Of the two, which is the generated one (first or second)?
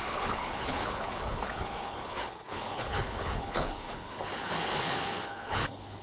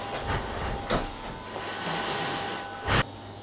first